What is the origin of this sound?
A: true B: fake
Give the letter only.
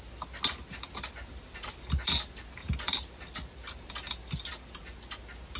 A